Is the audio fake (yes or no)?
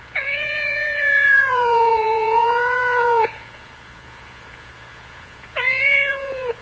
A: yes